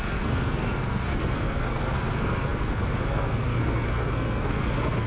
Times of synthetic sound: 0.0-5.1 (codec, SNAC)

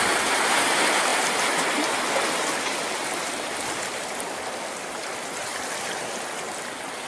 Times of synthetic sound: none

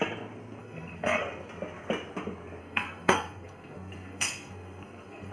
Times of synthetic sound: 0.6-1.2 (codec, SNAC); 2.6-5.3

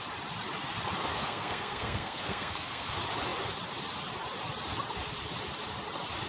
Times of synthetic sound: 1.1-2.9 (codec, SNAC)

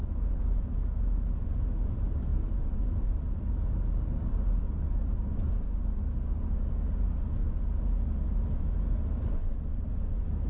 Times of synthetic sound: none

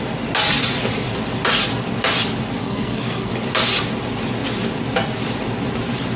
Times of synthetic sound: 2.6-3.3 (codec, SNAC)